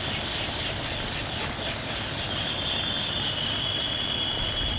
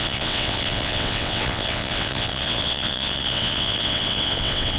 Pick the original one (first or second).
first